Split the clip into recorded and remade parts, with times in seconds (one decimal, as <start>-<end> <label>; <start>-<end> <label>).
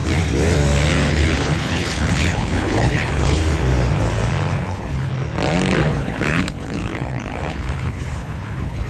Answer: 0.0-1.1 recorded; 1.1-3.4 remade; 3.4-4.5 recorded; 4.5-5.1 remade; 5.1-5.9 recorded; 5.9-8.9 remade